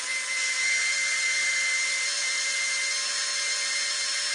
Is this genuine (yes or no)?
yes